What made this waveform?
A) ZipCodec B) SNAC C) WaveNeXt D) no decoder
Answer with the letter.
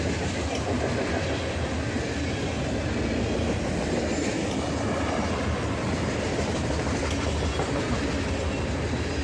D